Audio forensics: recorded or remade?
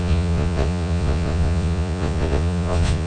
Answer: remade